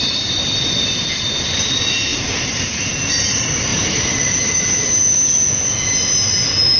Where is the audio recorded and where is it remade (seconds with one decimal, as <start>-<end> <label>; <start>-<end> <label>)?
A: 0.0-2.1 recorded; 2.1-3.1 remade; 3.1-3.7 recorded; 3.7-4.4 remade; 4.4-6.8 recorded